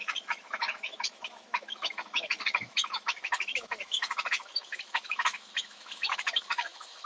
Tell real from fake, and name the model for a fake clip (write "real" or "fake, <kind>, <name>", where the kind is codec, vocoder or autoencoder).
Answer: fake, autoencoder, DAC-VAE